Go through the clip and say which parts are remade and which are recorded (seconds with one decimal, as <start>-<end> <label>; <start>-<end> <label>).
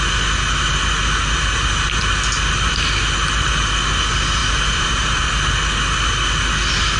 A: 0.0-4.4 recorded; 4.4-5.3 remade; 5.3-7.0 recorded